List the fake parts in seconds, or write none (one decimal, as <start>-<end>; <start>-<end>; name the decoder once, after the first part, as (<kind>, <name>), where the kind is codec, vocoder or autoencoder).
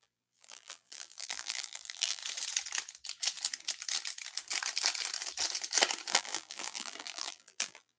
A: 0.0-2.2 (vocoder, BigVGAN v2); 6.1-8.0